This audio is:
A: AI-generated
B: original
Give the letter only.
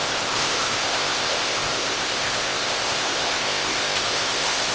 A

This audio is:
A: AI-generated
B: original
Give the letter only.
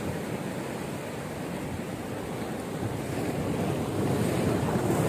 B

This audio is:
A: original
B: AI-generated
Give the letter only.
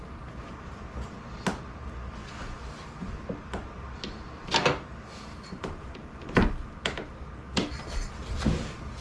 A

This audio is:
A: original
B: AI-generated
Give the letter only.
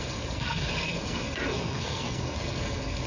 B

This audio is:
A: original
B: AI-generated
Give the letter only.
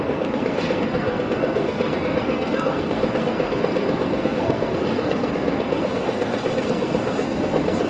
B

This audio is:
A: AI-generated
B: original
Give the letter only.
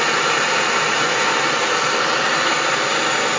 B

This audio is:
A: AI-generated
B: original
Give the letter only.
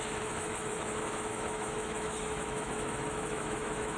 A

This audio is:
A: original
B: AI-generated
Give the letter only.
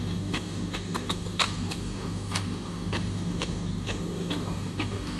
B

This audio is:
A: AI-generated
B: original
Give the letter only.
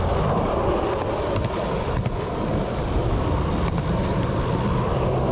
B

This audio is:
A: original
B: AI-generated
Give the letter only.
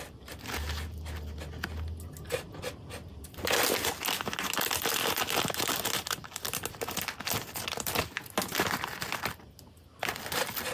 A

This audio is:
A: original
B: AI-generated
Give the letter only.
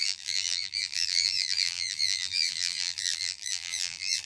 B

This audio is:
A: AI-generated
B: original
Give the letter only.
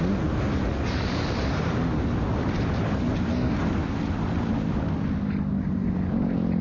B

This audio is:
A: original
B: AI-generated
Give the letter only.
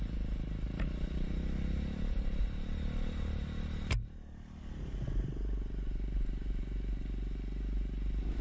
A